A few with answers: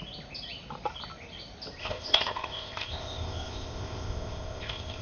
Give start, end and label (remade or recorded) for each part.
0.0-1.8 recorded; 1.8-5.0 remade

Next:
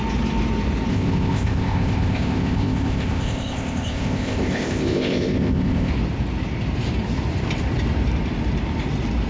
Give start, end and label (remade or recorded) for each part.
0.0-0.9 recorded; 0.9-5.9 remade; 5.9-9.3 recorded

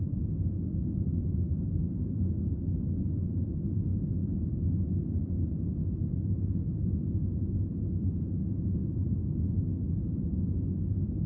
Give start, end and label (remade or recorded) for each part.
0.0-11.3 recorded

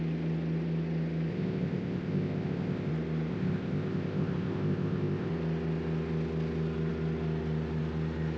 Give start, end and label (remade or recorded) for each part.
0.0-1.3 recorded; 1.3-2.9 remade; 2.9-3.3 recorded; 3.3-5.3 remade; 5.3-8.4 recorded

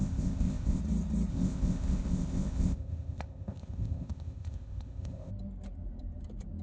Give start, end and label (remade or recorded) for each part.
0.0-0.8 remade; 0.8-1.3 recorded; 1.3-5.3 remade; 5.3-6.6 recorded

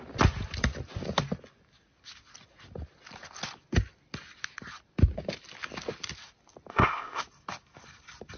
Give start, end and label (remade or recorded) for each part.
0.0-6.7 recorded; 6.7-7.2 remade; 7.2-8.4 recorded

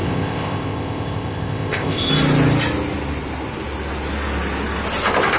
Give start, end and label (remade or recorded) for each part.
0.0-2.1 remade; 2.1-5.4 recorded

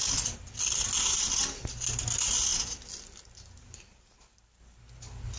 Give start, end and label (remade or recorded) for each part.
0.0-5.4 recorded